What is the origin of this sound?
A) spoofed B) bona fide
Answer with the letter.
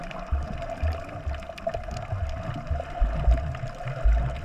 B